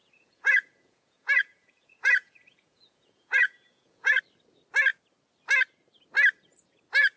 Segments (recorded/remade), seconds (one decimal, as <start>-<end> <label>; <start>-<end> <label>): 0.0-4.2 remade; 4.2-7.2 recorded